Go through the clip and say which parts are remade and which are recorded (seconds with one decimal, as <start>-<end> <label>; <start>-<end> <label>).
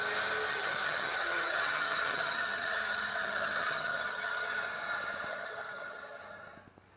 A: 0.0-0.5 recorded; 0.5-4.7 remade; 4.7-5.3 recorded; 5.3-6.2 remade; 6.2-7.0 recorded